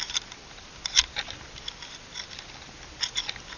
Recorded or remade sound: recorded